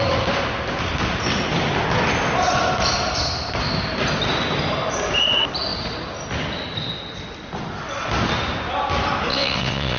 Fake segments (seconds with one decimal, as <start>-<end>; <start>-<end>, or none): 9.3-10.0